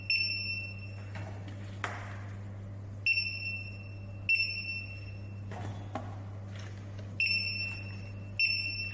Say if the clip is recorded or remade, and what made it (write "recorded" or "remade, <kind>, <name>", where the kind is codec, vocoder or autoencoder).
recorded